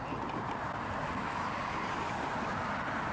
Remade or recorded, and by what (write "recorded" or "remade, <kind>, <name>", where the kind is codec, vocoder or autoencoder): recorded